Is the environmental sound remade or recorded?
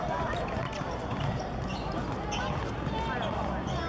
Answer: recorded